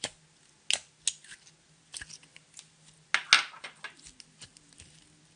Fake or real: real